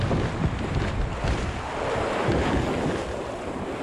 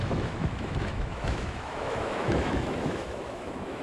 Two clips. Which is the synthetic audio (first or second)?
second